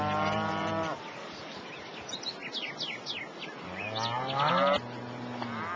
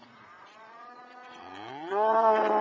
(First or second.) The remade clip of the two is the second